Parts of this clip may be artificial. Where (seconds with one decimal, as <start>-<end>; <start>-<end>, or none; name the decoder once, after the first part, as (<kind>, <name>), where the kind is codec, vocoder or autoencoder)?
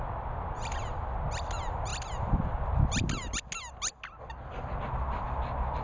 none